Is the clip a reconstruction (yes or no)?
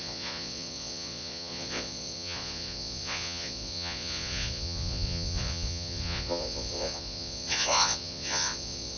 yes